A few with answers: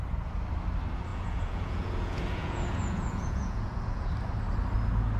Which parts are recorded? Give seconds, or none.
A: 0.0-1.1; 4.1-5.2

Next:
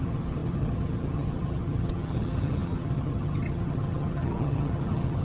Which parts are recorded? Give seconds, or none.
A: none

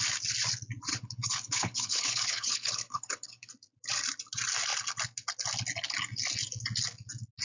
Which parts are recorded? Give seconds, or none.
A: 0.0-0.9; 3.5-7.4

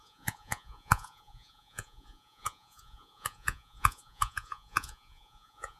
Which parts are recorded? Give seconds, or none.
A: none

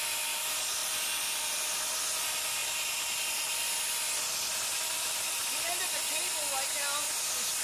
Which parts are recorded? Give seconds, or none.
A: 0.0-0.8; 1.5-2.6; 5.5-7.6

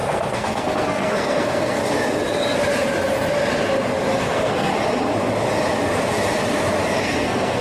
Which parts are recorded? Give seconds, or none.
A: 1.8-4.2; 4.7-7.0

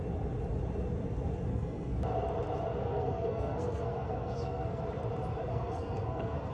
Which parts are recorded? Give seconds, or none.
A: 0.0-1.5; 2.0-2.8; 4.8-5.4

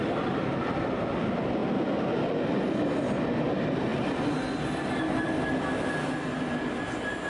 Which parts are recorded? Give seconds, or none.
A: 0.0-7.3